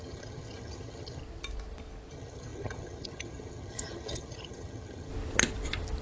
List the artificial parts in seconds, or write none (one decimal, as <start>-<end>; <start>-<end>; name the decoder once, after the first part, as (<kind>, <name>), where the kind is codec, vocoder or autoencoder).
0.0-1.2 (vocoder, HiFi-GAN); 2.1-5.1